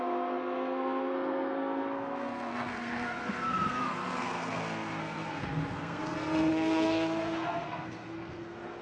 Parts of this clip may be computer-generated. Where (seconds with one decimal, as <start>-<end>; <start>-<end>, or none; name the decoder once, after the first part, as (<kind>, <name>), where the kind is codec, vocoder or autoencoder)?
0.0-8.8 (codec, SNAC)

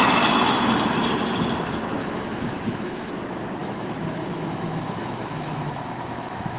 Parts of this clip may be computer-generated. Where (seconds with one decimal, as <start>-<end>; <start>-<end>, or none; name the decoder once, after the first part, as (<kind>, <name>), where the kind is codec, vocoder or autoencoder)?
2.0-3.1 (autoencoder, DAC-VAE); 3.6-6.6

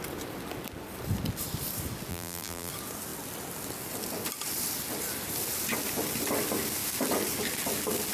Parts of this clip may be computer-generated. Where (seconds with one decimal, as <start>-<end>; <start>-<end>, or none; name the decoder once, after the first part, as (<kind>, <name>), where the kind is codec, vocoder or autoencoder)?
2.1-2.7 (vocoder, BigVGAN v2)

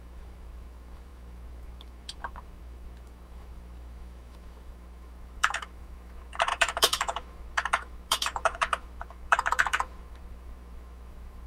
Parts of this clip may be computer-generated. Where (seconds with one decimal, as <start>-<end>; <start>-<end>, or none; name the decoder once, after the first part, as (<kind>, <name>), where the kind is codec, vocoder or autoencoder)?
0.0-11.5 (autoencoder, DAC-VAE)

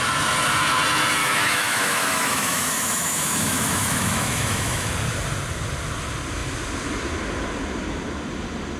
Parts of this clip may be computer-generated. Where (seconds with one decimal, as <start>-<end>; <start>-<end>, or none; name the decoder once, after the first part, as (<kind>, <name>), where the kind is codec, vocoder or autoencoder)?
1.2-4.9 (autoencoder, DAC-VAE)

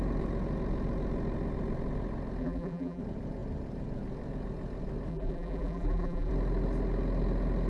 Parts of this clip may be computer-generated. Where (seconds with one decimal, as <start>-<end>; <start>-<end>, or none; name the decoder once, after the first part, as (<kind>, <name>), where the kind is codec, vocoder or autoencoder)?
2.4-3.0 (vocoder, BigVGAN v2); 5.1-6.3

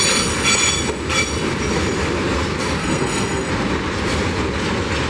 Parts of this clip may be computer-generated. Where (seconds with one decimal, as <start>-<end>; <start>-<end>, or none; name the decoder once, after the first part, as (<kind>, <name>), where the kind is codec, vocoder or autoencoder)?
2.8-3.5 (codec, SNAC)